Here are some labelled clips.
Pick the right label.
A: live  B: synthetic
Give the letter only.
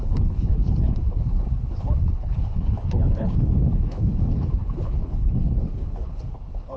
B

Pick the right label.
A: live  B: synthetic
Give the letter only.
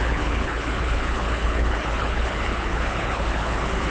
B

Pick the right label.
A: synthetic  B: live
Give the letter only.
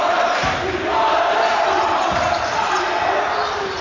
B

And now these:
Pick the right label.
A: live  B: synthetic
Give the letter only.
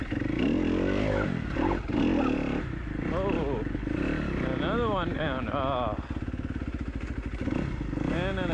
A